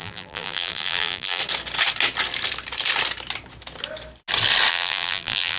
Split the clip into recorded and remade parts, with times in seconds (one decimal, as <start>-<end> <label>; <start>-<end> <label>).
0.0-1.4 remade; 1.4-4.7 recorded; 4.7-5.6 remade